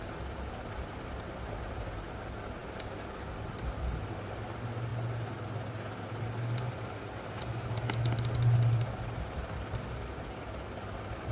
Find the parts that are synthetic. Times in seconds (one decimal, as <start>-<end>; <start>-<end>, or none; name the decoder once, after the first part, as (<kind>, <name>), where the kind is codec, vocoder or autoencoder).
none